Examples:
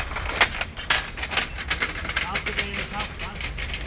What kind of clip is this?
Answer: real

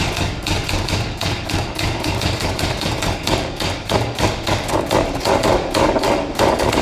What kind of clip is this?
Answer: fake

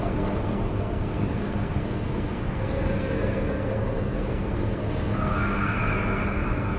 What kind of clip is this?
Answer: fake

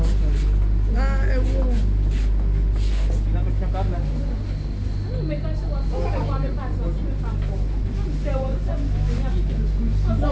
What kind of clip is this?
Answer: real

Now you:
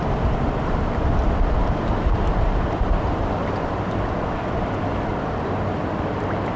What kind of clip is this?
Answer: real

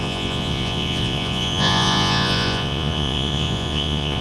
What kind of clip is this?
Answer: fake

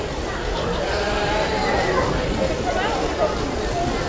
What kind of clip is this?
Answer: real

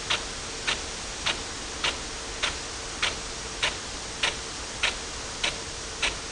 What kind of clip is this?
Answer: real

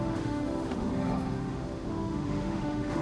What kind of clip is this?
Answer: fake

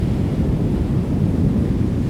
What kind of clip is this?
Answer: real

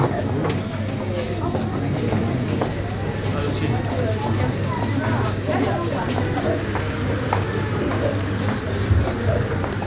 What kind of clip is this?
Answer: real